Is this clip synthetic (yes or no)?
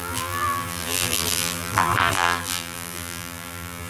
yes